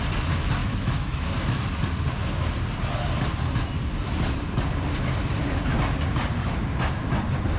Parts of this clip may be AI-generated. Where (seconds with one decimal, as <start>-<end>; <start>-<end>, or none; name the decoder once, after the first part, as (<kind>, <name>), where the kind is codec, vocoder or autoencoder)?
0.6-1.3 (autoencoder, DAC-VAE)